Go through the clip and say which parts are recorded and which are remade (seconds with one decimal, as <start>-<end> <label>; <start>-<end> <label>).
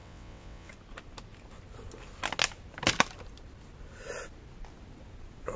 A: 0.0-0.7 remade; 0.7-5.6 recorded